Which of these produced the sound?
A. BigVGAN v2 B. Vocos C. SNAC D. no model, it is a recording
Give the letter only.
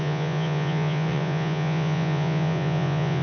B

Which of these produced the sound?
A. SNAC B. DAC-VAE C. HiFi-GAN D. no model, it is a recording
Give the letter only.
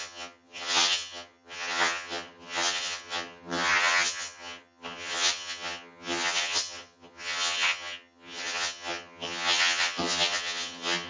C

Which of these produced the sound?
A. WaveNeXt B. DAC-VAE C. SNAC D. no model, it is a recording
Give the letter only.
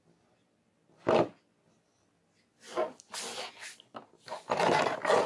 D